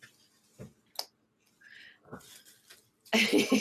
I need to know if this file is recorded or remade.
recorded